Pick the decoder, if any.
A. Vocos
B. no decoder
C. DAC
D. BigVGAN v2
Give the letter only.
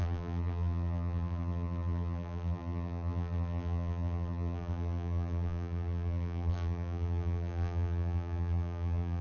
D